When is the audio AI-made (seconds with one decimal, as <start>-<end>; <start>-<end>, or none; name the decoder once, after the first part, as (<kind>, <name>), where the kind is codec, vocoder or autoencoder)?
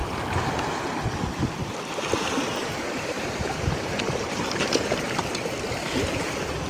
2.6-5.4 (vocoder, BigVGAN v2)